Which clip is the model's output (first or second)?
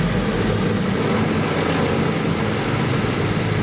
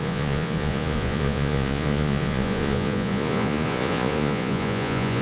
second